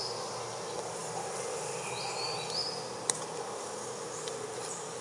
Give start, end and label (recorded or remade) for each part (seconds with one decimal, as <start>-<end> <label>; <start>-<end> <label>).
0.0-5.0 recorded